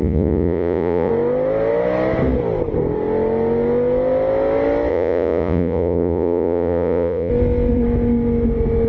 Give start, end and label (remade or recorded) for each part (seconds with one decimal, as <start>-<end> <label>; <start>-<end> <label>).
0.0-1.1 remade; 1.1-4.9 recorded; 4.9-7.3 remade; 7.3-8.9 recorded